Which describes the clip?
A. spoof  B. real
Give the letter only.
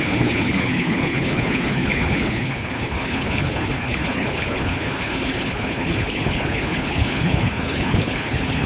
A